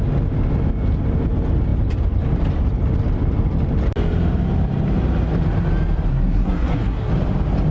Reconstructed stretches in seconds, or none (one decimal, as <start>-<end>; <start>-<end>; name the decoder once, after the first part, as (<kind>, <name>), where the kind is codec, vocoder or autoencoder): 6.1-7.1 (codec, SNAC)